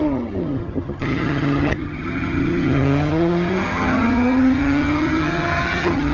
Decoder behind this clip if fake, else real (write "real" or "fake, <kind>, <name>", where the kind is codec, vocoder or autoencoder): fake, vocoder, HiFi-GAN